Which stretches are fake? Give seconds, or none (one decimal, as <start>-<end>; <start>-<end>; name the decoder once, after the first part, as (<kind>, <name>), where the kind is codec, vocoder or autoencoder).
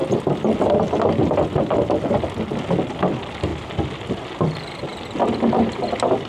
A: none